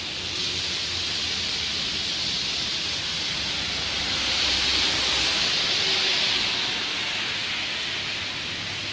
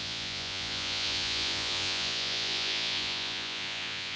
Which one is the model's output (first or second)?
second